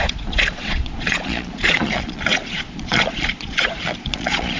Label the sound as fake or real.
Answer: fake